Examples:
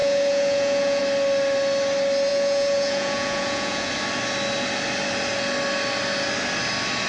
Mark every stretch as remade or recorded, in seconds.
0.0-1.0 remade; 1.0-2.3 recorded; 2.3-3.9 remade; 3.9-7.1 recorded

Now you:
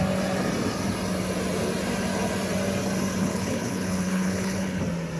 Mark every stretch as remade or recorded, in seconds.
0.0-3.2 recorded; 3.2-4.8 remade; 4.8-5.2 recorded